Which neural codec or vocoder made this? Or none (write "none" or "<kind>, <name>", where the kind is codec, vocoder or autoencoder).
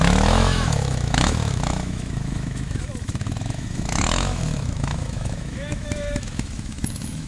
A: autoencoder, DAC-VAE